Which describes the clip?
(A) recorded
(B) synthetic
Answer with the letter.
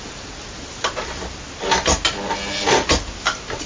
A